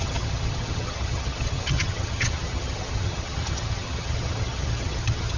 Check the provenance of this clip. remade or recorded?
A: remade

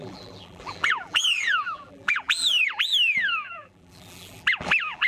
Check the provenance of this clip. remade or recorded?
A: remade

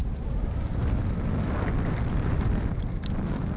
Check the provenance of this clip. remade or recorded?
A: recorded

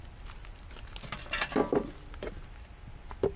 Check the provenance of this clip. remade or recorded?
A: recorded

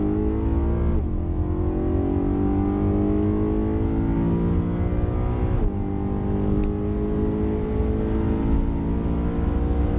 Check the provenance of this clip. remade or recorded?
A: recorded